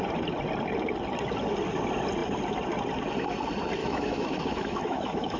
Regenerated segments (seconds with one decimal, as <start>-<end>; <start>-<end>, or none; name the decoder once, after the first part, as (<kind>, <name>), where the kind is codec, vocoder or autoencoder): 3.8-5.4 (autoencoder, DAC-VAE)

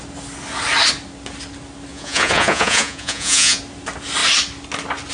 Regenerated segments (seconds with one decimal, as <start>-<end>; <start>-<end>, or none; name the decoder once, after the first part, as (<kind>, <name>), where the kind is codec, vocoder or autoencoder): 1.9-3.6 (vocoder, Vocos)